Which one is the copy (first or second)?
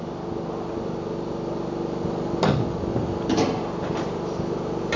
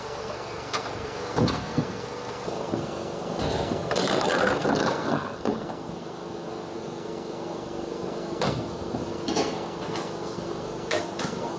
second